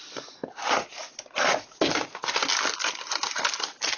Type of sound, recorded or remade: recorded